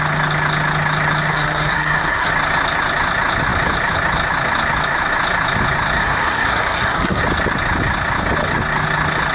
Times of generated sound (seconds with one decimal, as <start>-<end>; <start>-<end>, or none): 1.3-2.3; 6.0-7.2